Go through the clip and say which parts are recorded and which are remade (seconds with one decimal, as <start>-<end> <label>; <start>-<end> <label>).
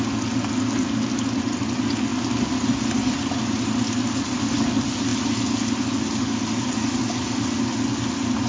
0.0-8.5 recorded